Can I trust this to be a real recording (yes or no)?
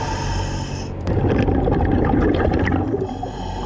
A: yes